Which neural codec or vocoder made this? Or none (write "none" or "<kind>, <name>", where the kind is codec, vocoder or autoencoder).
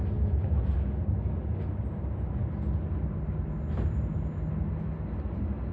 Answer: none